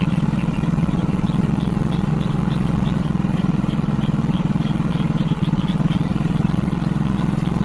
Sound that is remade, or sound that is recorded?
remade